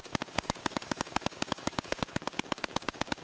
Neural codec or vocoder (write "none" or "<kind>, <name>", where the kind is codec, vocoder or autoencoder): codec, DAC